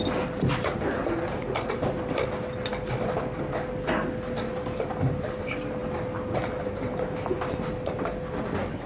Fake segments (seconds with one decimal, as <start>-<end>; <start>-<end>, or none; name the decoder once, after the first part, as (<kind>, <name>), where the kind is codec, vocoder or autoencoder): none